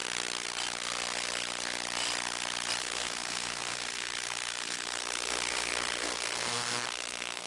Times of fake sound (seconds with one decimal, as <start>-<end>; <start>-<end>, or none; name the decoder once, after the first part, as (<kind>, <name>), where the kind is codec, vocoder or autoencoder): 2.8-7.5 (codec, SNAC)